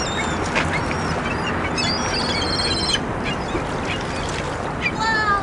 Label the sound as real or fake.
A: real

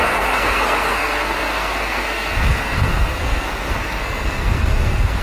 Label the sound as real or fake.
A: fake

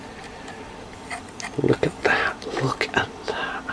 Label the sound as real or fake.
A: real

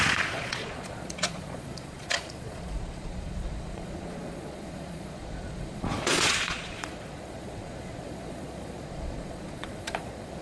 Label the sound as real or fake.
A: fake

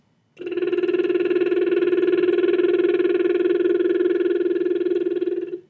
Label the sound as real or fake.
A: real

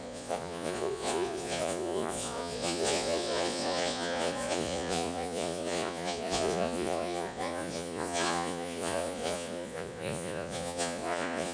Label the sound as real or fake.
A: fake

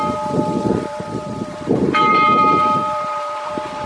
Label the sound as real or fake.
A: fake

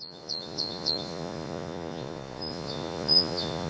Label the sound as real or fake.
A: fake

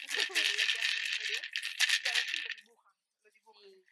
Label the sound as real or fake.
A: real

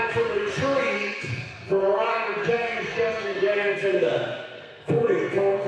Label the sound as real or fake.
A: fake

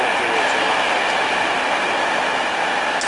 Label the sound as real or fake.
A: real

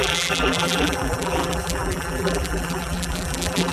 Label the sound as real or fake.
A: fake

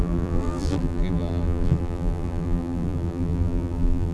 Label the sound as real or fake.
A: fake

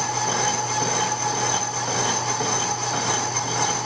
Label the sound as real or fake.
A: real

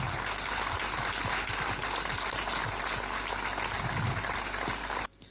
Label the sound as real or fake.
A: real